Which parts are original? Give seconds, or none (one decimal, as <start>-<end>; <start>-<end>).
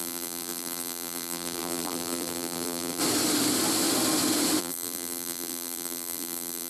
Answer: 3.0-4.6